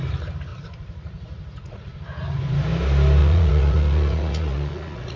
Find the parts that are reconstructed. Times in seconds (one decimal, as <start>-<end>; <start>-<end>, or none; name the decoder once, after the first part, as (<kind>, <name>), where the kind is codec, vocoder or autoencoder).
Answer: 0.5-2.0 (vocoder, Vocos); 3.2-5.2